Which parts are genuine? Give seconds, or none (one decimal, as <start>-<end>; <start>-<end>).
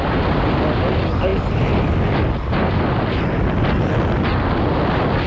0.0-5.3